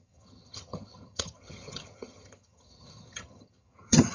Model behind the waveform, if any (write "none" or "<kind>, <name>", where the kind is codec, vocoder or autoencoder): vocoder, HiFi-GAN